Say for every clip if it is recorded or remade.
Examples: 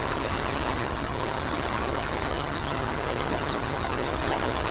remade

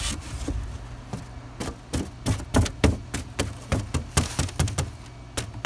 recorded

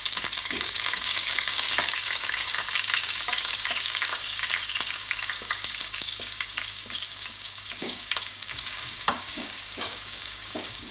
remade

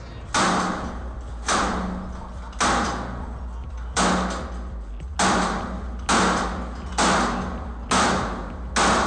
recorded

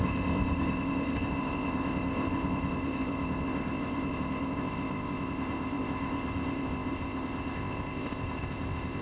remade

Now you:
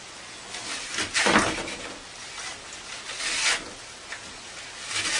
recorded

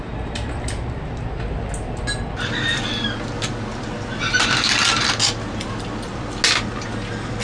recorded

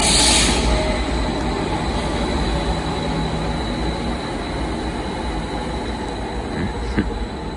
recorded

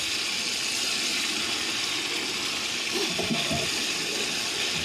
recorded